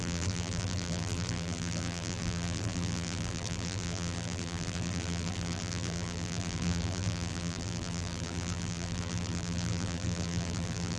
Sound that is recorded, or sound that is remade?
remade